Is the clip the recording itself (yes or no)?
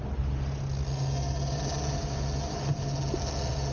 yes